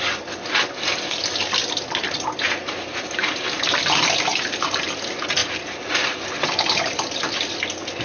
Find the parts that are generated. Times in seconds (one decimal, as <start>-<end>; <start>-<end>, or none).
4.3-4.8